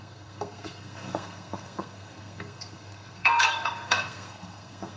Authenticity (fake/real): fake